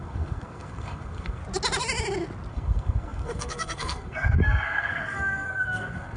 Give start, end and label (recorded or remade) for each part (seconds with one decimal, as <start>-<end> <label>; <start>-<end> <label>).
0.0-1.4 remade; 1.4-2.5 recorded; 2.5-6.2 remade